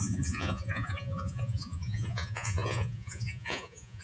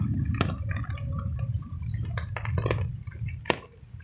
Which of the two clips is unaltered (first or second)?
second